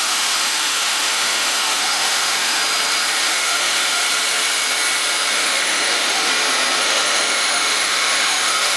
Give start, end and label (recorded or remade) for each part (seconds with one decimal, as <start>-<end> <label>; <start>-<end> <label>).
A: 0.0-2.6 remade; 2.6-3.2 recorded; 3.2-4.0 remade; 4.0-5.3 recorded; 5.3-6.3 remade; 6.3-6.8 recorded; 6.8-8.8 remade